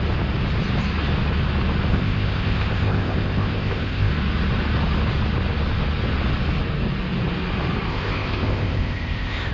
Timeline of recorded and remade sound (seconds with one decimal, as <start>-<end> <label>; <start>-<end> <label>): 0.0-1.9 recorded; 1.9-4.1 remade; 4.1-7.9 recorded; 7.9-9.5 remade